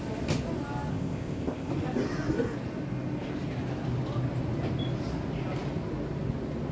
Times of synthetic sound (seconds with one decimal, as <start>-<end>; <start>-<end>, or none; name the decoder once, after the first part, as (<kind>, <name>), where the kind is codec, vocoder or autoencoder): 0.9-1.7 (codec, ZipCodec)